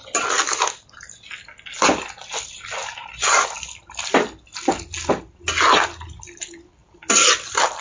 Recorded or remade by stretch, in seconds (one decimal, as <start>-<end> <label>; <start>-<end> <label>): 0.0-6.8 recorded; 6.8-7.8 remade